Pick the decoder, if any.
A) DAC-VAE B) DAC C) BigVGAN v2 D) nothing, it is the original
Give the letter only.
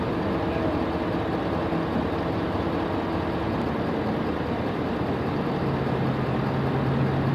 D